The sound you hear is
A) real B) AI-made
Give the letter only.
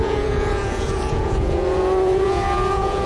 B